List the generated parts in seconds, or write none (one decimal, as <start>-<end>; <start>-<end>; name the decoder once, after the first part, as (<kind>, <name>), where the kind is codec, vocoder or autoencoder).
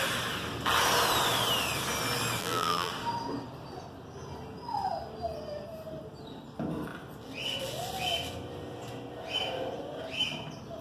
2.4-2.9 (vocoder, BigVGAN v2)